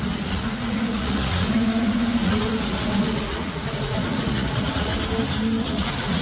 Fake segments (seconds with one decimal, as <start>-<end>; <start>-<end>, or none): 0.0-4.9; 5.6-6.2